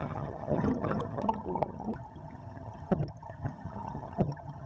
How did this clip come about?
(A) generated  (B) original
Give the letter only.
A